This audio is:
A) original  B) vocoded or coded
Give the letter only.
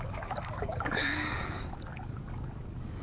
B